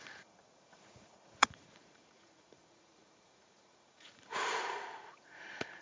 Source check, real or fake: fake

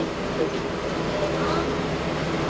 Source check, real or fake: real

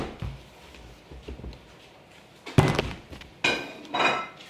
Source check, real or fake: real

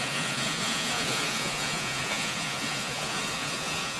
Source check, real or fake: fake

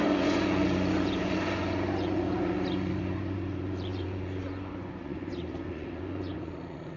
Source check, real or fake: fake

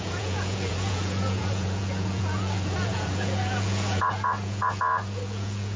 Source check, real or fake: fake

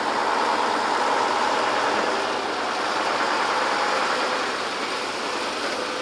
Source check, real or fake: real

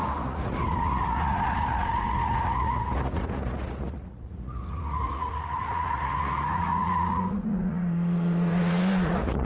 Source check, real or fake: fake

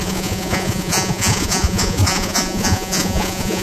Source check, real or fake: fake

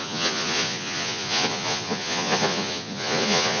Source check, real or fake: fake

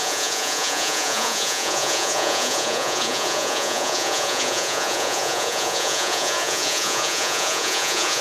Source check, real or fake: fake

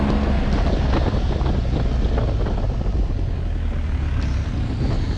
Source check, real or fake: real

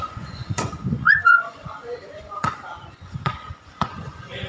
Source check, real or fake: fake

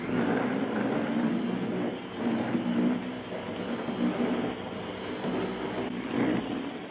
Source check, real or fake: real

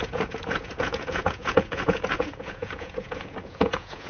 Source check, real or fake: fake